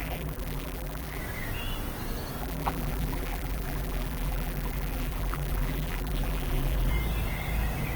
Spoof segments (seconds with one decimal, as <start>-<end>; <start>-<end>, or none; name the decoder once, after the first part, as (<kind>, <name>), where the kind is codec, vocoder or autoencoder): 0.0-1.2 (vocoder, BigVGAN v2); 2.4-6.9

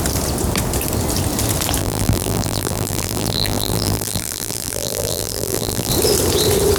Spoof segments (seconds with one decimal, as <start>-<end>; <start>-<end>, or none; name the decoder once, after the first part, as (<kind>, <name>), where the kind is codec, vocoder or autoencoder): 1.8-5.9 (vocoder, BigVGAN v2)

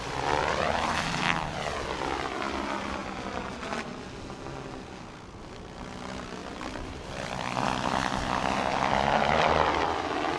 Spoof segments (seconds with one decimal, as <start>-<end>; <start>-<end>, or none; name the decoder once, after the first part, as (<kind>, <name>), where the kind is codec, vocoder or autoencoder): 6.4-10.4 (vocoder, BigVGAN v2)

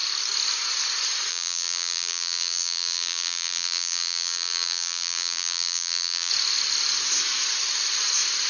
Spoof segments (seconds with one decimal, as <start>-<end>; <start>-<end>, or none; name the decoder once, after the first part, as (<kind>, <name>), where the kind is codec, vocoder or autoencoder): 1.3-6.3 (vocoder, BigVGAN v2)

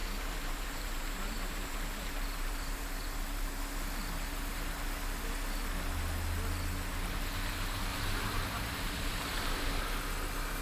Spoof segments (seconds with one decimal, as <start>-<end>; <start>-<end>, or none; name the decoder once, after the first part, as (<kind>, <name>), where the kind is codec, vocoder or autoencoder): 0.0-3.6 (vocoder, BigVGAN v2); 7.9-9.8